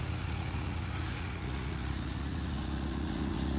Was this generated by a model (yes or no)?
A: yes